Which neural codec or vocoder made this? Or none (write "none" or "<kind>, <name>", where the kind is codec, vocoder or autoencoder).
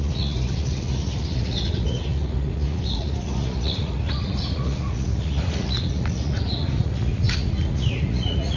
vocoder, Vocos